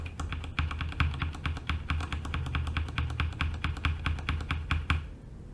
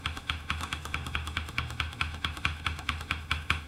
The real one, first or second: first